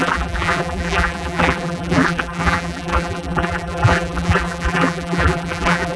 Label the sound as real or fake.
fake